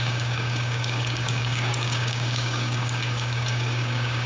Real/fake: fake